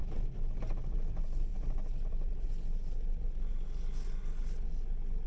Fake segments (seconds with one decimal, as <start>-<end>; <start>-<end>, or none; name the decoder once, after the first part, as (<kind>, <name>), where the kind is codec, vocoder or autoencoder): none